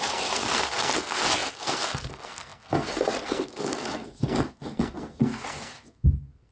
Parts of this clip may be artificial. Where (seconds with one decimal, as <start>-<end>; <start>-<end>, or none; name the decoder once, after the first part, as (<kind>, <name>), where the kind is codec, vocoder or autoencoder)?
0.0-6.5 (codec, SNAC)